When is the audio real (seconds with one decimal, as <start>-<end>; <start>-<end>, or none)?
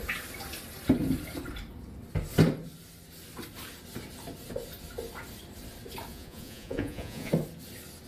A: 0.0-6.1; 7.3-8.1